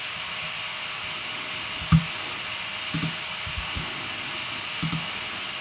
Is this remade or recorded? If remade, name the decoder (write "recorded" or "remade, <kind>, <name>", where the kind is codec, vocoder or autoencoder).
recorded